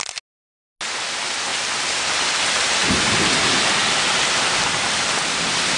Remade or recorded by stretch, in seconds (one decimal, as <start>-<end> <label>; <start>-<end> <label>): 0.0-5.8 recorded